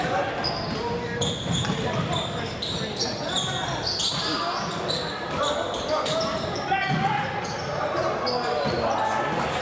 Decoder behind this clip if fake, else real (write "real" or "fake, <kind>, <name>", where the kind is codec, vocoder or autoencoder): real